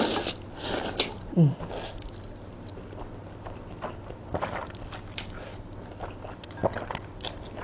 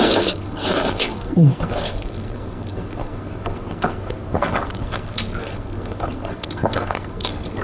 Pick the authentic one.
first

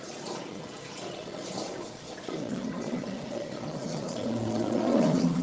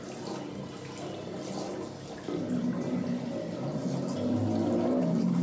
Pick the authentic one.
second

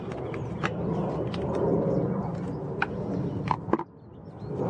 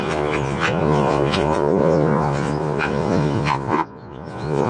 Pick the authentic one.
first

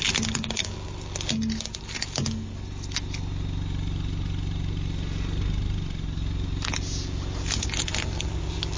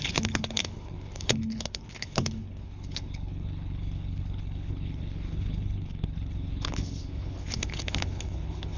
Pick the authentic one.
first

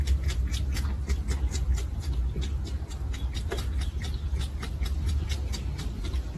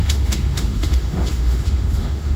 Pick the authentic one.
first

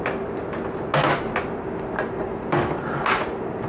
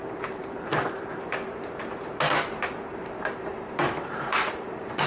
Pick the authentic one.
first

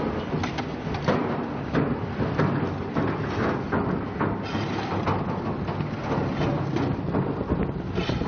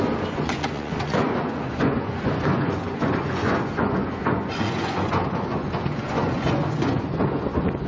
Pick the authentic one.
first